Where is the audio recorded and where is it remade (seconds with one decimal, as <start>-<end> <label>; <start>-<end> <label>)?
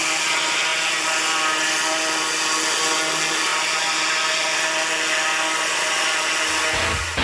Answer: 0.0-7.2 recorded